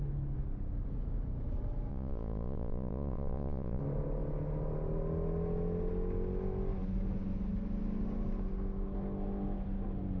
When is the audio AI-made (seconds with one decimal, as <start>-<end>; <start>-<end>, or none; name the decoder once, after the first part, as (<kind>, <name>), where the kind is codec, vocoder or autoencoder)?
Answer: 1.9-3.8 (vocoder, Vocos)